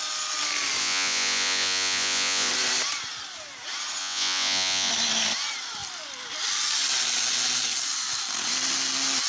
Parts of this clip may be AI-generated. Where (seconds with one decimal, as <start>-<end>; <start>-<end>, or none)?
0.8-2.5; 4.0-4.9